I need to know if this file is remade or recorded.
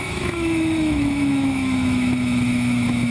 remade